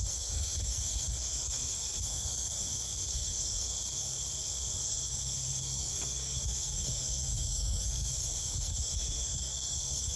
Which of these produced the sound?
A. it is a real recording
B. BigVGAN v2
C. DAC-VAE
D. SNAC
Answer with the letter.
D